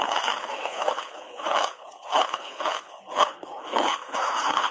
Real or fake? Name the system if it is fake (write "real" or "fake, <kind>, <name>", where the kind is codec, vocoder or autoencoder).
fake, codec, HILCodec